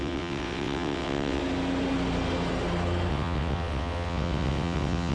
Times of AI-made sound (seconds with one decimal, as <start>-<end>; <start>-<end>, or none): 0.0-1.4; 3.1-5.1